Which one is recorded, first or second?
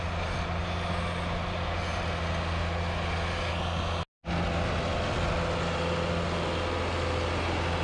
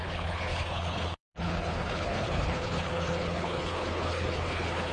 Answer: first